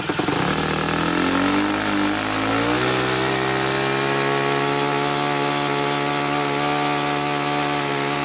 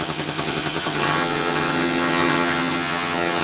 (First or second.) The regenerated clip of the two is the second